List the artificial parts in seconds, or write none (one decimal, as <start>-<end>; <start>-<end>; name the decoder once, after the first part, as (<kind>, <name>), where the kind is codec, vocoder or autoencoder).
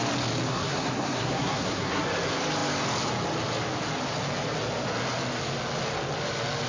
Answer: 0.5-2.0 (codec, SNAC)